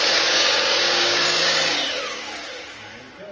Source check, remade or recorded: remade